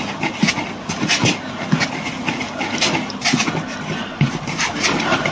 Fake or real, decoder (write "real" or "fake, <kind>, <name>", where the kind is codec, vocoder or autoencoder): real